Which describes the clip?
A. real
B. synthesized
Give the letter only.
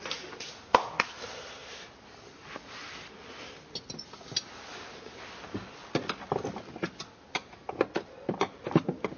A